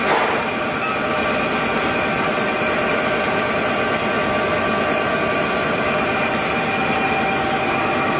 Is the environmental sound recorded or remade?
recorded